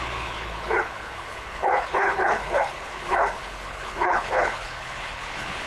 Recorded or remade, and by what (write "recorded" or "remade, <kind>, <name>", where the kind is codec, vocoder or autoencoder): remade, codec, HILCodec